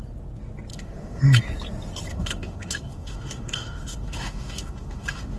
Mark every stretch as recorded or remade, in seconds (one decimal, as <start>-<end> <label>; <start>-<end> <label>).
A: 0.0-0.7 recorded; 0.7-1.2 remade; 1.2-2.1 recorded; 2.1-5.4 remade